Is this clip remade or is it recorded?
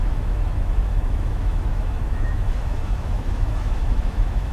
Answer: remade